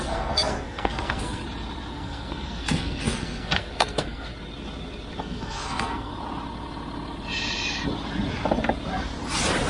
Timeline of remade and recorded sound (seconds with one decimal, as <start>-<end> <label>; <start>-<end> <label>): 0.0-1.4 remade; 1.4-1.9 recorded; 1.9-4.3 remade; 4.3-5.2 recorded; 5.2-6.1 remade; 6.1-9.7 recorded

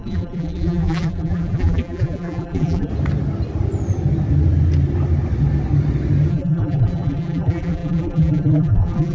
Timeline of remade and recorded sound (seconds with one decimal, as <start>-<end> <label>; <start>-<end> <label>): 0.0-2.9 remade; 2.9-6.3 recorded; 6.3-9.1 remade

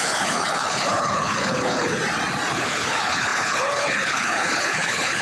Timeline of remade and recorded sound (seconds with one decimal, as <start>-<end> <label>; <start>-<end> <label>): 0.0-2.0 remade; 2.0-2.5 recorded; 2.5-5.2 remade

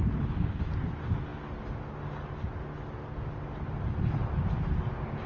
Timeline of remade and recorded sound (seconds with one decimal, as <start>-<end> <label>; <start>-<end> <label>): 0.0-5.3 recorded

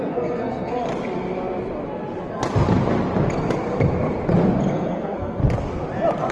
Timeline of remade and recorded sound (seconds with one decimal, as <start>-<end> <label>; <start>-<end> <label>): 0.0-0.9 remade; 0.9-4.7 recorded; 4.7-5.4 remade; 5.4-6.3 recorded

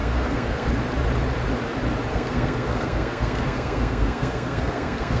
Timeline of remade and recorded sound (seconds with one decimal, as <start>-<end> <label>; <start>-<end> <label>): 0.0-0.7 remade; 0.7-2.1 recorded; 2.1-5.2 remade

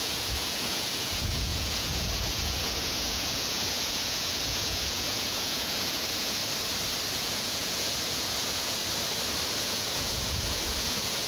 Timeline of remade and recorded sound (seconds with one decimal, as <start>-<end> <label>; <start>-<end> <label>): 0.0-6.4 remade; 6.4-7.1 recorded; 7.1-8.8 remade; 8.8-9.6 recorded; 9.6-11.3 remade

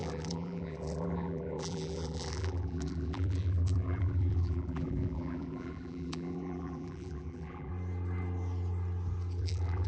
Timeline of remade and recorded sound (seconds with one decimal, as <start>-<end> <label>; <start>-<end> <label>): 0.0-7.7 remade; 7.7-9.4 recorded; 9.4-9.9 remade